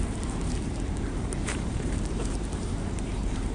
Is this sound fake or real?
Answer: fake